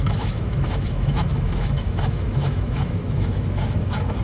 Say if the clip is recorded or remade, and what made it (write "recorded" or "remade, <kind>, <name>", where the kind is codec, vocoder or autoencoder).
remade, autoencoder, DAC-VAE